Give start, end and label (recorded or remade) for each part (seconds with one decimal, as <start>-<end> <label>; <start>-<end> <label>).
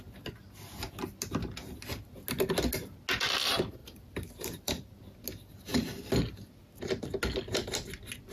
0.0-3.8 recorded; 3.8-5.0 remade; 5.0-5.7 recorded; 5.7-6.6 remade; 6.6-8.3 recorded